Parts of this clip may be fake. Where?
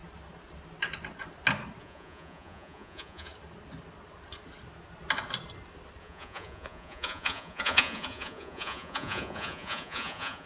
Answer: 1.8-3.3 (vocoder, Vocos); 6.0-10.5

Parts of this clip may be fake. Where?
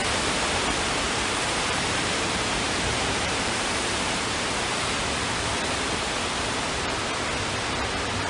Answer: 0.0-5.0 (vocoder, BigVGAN v2)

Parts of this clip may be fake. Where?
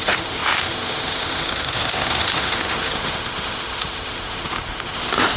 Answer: 0.0-5.4 (autoencoder, DAC-VAE)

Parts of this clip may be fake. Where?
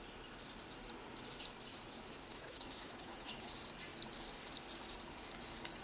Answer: 2.3-3.5 (autoencoder, DAC-VAE)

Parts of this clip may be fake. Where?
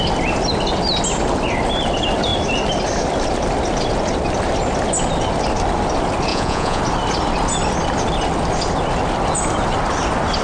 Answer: 6.3-6.8 (vocoder, Vocos)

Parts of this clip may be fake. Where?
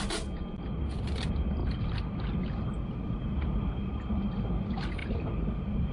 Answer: none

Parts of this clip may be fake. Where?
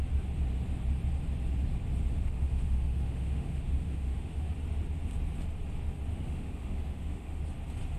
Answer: 2.1-4.5 (autoencoder, DAC-VAE); 6.1-7.4